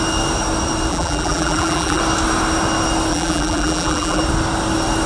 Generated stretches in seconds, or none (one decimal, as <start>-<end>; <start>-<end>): 0.9-2.0; 3.1-4.2